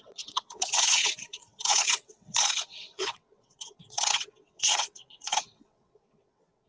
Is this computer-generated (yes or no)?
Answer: yes